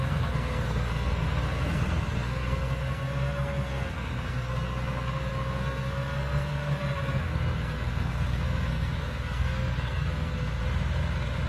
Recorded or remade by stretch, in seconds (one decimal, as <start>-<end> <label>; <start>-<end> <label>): 0.0-10.6 remade; 10.6-11.5 recorded